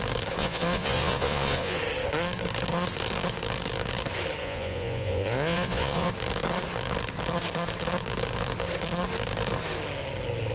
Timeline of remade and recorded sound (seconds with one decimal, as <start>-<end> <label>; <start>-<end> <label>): 0.0-0.4 recorded; 0.4-1.8 remade; 1.8-4.4 recorded; 4.4-6.1 remade; 6.1-10.5 recorded